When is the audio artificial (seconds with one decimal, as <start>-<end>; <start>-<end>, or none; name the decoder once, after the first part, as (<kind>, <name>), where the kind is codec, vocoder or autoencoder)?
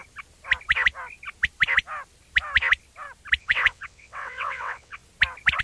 3.4-5.0 (vocoder, WaveNeXt)